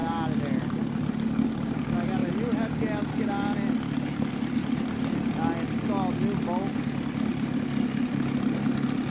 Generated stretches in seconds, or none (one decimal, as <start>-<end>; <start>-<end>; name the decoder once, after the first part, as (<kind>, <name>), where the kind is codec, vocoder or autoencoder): none